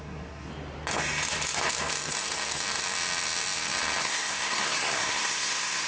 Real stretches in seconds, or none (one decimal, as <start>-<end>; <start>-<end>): 0.5-4.0